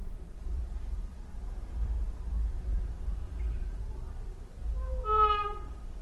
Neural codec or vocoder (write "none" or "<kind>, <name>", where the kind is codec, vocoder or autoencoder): vocoder, BigVGAN v2